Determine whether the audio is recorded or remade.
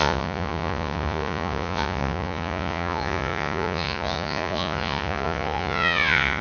remade